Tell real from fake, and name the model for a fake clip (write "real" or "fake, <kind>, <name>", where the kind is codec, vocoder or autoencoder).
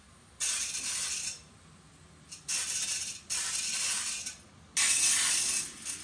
real